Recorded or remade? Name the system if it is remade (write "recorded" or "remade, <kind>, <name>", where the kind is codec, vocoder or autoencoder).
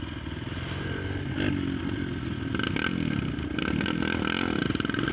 recorded